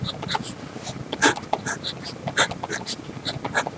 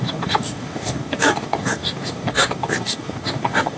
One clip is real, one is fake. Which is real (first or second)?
first